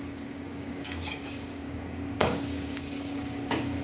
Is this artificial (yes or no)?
yes